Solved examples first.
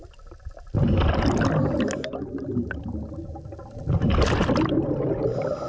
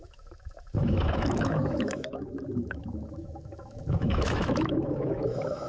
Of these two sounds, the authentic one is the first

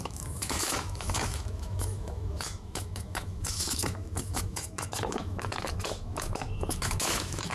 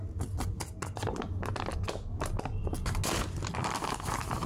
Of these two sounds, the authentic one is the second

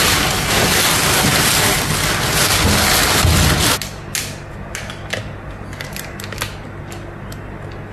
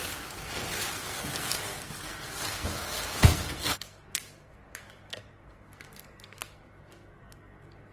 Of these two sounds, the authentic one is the first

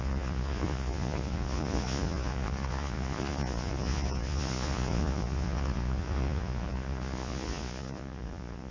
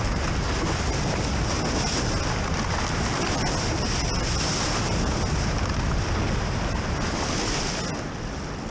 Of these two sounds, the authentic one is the second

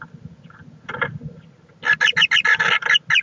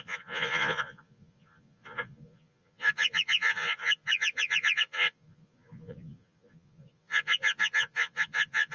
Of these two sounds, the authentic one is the first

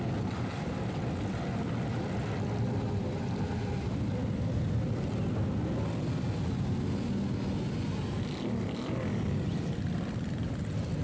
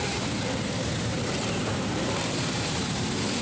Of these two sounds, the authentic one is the first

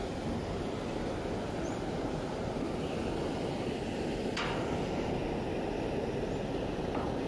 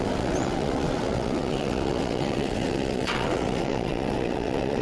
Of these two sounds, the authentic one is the first